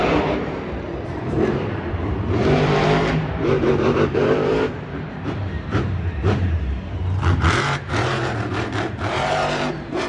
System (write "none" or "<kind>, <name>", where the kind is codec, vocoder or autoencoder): vocoder, BigVGAN v2